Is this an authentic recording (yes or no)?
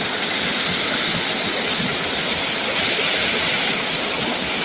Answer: yes